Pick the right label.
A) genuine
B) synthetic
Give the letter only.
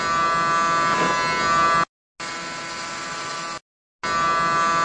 A